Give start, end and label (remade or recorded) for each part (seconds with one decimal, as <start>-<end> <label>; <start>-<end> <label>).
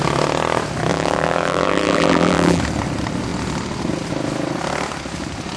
0.0-0.9 recorded; 0.9-2.6 remade; 2.6-5.6 recorded